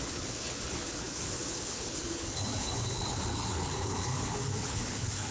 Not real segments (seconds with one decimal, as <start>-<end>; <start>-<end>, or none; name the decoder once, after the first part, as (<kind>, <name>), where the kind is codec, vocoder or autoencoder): 0.0-5.3 (codec, HILCodec)

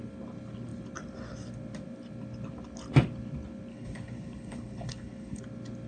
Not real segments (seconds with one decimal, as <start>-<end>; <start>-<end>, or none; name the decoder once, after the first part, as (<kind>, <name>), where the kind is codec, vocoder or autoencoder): 3.7-5.4 (codec, HILCodec)

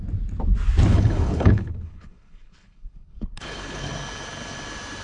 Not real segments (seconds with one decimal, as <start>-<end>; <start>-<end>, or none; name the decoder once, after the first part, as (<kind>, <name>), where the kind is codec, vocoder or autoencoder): 0.9-3.9 (codec, HILCodec)

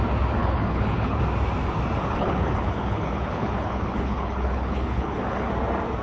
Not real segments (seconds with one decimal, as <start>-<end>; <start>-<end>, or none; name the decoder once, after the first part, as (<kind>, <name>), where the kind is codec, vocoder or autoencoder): 0.4-1.2 (codec, HILCodec); 2.0-5.5

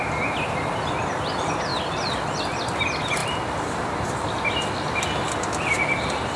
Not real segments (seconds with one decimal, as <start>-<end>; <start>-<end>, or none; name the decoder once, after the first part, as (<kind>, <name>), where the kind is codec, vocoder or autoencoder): none

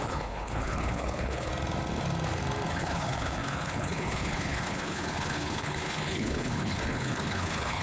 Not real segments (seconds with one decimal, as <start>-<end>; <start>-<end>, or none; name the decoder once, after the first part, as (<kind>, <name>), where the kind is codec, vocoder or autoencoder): 0.0-1.5 (codec, HILCodec); 2.7-7.8